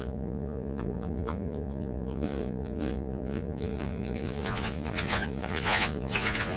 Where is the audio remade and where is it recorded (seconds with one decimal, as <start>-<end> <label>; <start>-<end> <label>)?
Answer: 0.0-6.6 remade